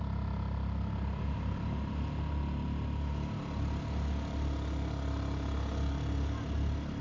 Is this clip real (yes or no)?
yes